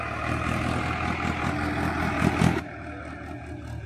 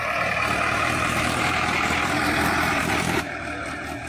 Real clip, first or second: first